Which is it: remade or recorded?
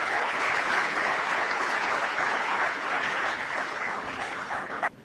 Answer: remade